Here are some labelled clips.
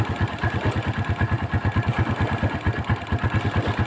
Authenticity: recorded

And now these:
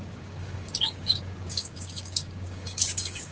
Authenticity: remade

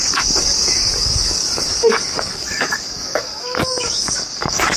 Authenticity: remade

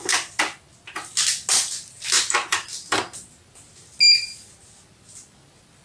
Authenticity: recorded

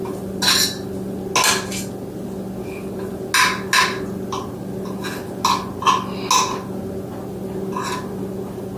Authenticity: recorded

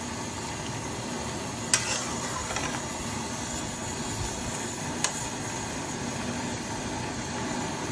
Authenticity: recorded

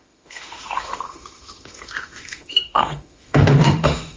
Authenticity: remade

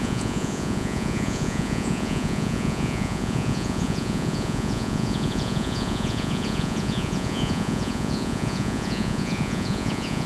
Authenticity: remade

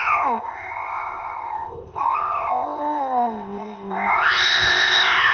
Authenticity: remade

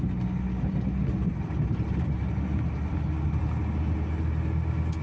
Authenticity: recorded